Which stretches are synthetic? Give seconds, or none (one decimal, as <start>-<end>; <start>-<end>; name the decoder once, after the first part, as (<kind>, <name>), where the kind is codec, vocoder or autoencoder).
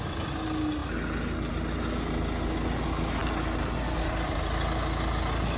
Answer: none